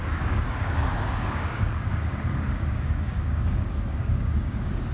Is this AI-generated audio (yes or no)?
yes